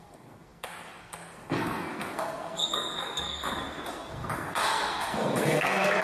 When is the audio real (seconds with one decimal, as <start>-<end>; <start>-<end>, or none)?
none